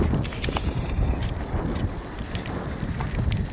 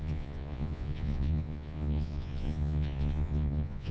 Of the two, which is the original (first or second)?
first